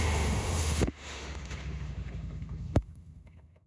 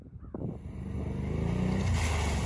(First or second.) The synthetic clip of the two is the first